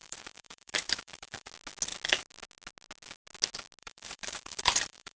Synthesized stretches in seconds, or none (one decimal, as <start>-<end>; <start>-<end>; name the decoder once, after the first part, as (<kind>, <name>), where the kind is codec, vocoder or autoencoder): 0.0-1.5 (vocoder, BigVGAN v2); 3.8-5.2